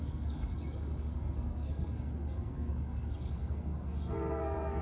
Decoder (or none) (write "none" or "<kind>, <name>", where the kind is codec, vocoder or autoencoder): codec, SNAC